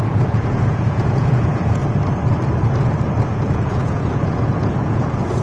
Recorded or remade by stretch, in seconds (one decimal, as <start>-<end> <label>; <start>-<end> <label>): 0.0-1.8 remade; 1.8-3.3 recorded; 3.3-5.4 remade